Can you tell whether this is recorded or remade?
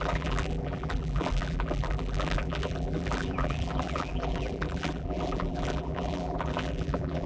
remade